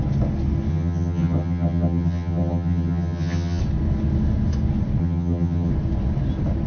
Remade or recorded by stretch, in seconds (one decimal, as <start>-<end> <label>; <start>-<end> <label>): 0.0-0.7 recorded; 0.7-3.6 remade; 3.6-5.0 recorded; 5.0-5.7 remade; 5.7-6.7 recorded